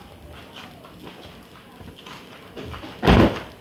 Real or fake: real